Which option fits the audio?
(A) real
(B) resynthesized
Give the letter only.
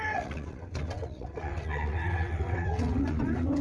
B